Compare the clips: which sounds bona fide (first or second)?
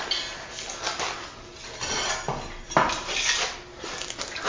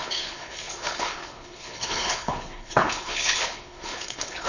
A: first